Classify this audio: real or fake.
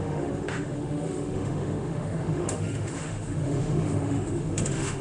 fake